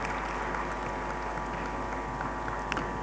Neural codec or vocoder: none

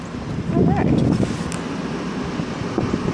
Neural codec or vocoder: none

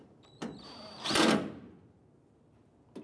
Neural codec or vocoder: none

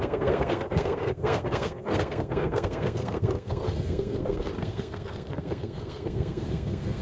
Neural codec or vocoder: codec, SNAC